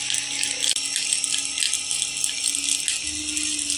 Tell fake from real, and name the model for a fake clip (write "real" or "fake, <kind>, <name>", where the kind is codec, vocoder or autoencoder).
real